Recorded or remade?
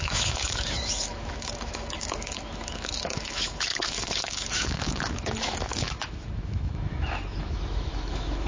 remade